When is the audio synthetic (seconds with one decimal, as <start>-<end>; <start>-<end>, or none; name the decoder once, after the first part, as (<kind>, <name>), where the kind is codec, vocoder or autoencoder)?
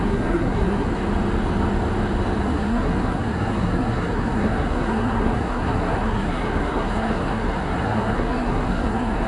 0.0-1.0 (codec, SNAC); 2.4-9.3